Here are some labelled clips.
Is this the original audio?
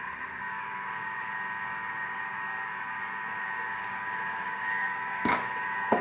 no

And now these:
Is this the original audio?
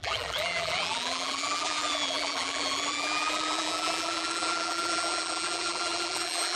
no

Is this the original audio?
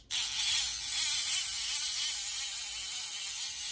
yes